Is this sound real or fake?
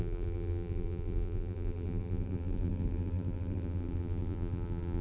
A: fake